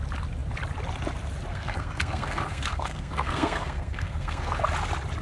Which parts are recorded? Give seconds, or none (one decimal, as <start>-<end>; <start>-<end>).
0.0-1.5; 4.6-5.2